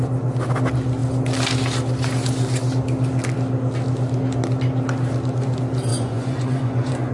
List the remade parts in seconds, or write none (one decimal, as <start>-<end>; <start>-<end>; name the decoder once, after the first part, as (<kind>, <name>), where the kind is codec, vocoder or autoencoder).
5.9-7.1 (vocoder, Vocos)